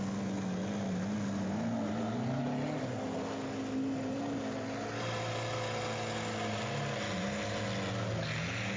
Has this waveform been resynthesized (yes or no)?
no